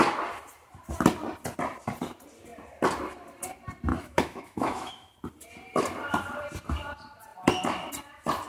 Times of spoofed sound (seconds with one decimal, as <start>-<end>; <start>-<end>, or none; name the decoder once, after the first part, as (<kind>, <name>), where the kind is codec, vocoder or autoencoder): 3.9-5.1 (autoencoder, DAC-VAE)